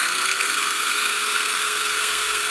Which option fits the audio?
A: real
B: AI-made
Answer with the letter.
B